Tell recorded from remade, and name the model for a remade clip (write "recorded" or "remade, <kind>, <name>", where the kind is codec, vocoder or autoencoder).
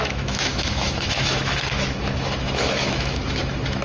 remade, autoencoder, DAC-VAE